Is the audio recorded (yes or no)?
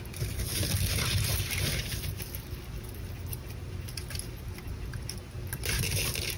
yes